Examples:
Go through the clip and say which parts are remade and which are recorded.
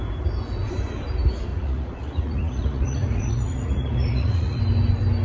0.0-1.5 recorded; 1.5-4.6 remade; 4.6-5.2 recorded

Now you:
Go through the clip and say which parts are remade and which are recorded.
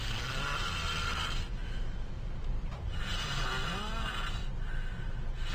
0.0-1.6 recorded; 1.6-3.0 remade; 3.0-5.5 recorded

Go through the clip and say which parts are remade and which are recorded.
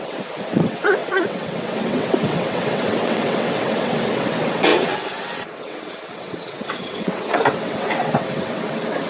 0.0-9.1 remade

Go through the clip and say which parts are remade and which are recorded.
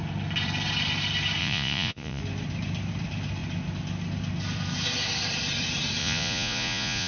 0.0-1.4 recorded; 1.4-2.2 remade; 2.2-6.0 recorded; 6.0-7.1 remade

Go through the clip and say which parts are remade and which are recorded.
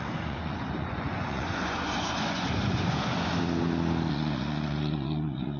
0.0-3.1 remade; 3.1-4.1 recorded; 4.1-5.6 remade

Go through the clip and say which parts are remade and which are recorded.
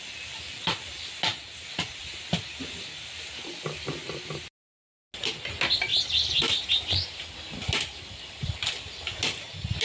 0.0-5.9 recorded; 5.9-7.2 remade; 7.2-9.8 recorded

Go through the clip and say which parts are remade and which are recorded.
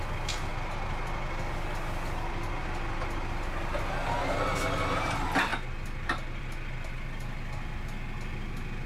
0.0-8.9 recorded